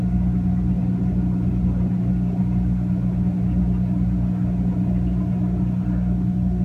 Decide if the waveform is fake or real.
real